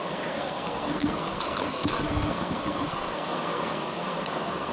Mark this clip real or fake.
fake